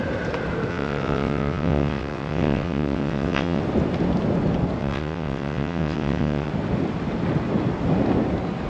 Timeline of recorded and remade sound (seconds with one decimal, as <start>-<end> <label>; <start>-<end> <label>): 0.0-0.7 recorded; 0.7-3.6 remade; 3.6-4.8 recorded; 4.8-6.5 remade; 6.5-8.7 recorded

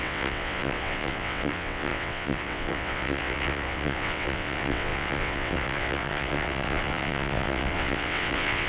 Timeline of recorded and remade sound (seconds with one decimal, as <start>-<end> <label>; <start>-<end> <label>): 0.0-8.7 remade